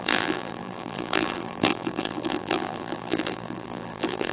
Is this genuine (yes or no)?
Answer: no